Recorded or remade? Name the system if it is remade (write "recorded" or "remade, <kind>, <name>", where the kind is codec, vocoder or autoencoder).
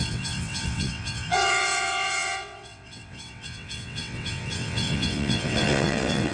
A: remade, vocoder, WaveNeXt